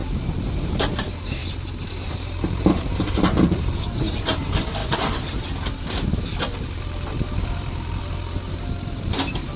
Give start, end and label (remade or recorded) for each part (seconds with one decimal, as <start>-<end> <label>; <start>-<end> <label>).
0.0-9.6 remade